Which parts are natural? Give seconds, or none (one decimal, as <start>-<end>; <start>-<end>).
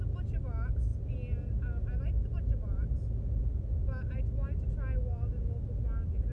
0.0-6.3